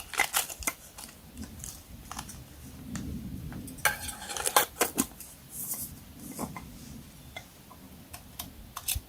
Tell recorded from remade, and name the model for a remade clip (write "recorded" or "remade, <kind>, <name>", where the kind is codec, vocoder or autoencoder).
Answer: recorded